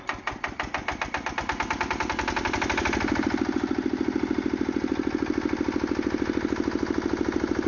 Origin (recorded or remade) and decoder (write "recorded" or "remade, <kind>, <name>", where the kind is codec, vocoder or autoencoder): recorded